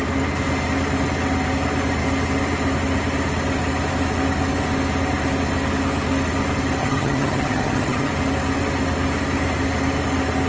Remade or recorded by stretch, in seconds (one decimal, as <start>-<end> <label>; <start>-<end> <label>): 0.0-6.8 recorded; 6.8-8.1 remade; 8.1-10.5 recorded